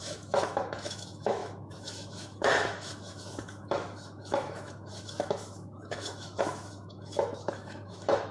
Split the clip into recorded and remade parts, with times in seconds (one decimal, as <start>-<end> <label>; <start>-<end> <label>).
0.0-8.3 remade